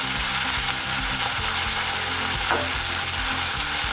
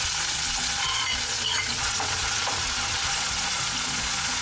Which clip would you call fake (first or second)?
second